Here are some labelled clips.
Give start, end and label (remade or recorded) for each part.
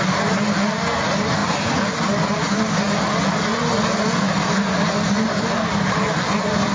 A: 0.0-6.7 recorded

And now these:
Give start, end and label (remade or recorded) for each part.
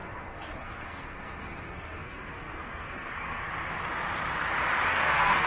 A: 0.0-3.5 remade; 3.5-4.9 recorded; 4.9-5.5 remade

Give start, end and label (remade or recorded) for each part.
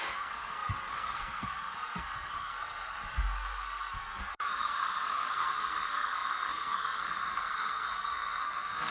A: 0.0-8.9 remade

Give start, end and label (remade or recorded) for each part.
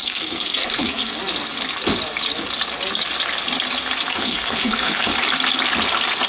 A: 0.0-1.1 remade; 1.1-4.1 recorded; 4.1-5.1 remade; 5.1-6.3 recorded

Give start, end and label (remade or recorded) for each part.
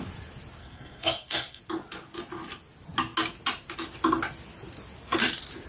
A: 0.0-0.6 recorded; 0.6-1.6 remade; 1.6-5.7 recorded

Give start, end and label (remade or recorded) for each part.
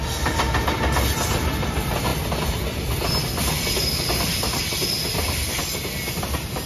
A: 0.0-6.7 recorded